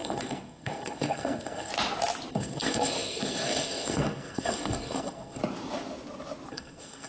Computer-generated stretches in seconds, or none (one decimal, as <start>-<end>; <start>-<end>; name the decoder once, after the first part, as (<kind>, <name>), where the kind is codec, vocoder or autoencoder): 0.0-1.7 (codec, SNAC); 2.3-5.4; 6.5-7.1